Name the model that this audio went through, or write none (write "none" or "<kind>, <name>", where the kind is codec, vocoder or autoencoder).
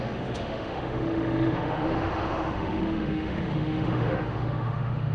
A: autoencoder, DAC-VAE